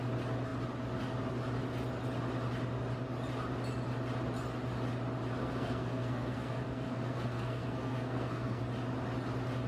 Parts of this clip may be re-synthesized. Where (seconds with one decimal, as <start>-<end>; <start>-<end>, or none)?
5.4-8.6